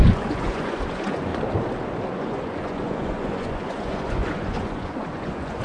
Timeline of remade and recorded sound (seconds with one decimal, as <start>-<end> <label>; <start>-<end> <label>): 0.0-1.3 remade; 1.3-2.1 recorded; 2.1-5.6 remade